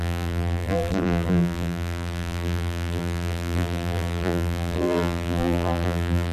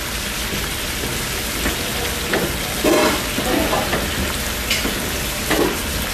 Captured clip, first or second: second